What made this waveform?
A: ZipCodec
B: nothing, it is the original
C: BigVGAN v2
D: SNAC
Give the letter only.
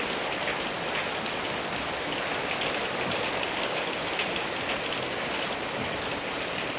B